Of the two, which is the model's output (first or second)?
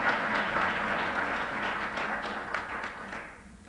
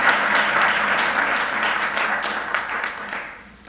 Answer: first